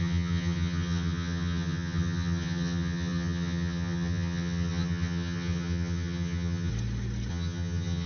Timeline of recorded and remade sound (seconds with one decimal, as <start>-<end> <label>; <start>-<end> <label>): 0.0-6.7 remade; 6.7-7.3 recorded; 7.3-8.1 remade